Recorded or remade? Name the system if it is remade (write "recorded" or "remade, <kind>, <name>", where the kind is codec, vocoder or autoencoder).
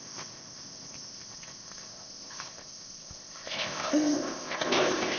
remade, codec, ZipCodec